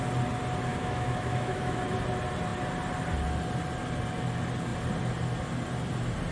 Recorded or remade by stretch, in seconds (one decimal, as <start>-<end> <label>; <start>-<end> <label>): 0.0-0.7 recorded; 0.7-1.8 remade; 1.8-6.3 recorded